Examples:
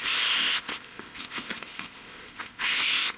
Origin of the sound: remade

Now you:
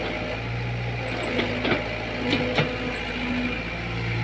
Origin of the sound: recorded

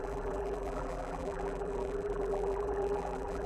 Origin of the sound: remade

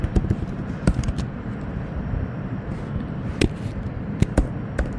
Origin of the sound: remade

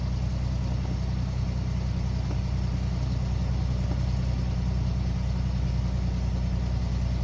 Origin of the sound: recorded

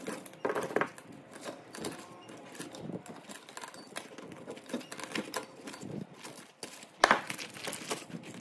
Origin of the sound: recorded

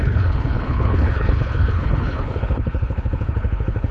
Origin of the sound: remade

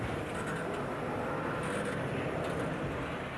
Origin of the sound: recorded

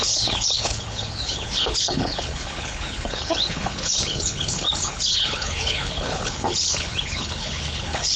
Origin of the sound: remade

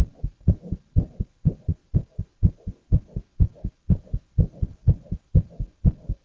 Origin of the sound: recorded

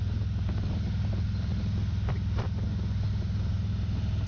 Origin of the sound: recorded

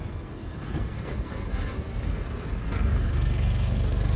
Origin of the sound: remade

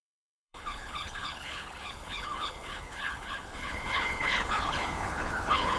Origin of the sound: remade